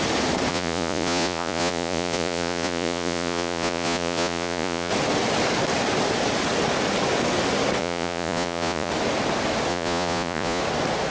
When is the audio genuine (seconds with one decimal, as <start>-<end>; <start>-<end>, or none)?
0.0-0.5; 4.9-7.8; 8.9-9.7; 10.6-11.1

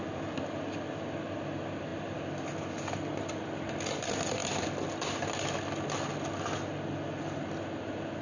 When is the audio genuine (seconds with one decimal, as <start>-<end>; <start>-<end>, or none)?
0.0-8.2

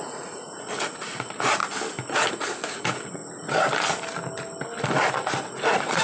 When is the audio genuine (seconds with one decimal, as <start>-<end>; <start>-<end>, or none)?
1.6-2.3; 3.2-5.4